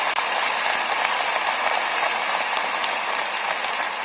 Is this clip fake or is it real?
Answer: real